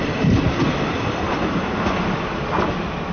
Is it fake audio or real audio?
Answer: real